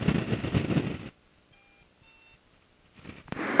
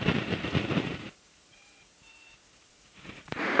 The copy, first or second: second